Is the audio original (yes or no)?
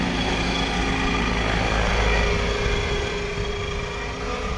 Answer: yes